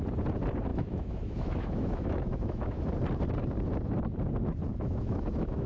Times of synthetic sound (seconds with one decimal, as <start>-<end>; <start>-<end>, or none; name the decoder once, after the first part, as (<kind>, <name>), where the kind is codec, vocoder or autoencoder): 0.7-2.9 (autoencoder, DAC-VAE); 4.7-5.7